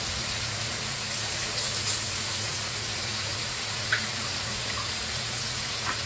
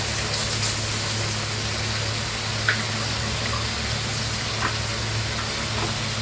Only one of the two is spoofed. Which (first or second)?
first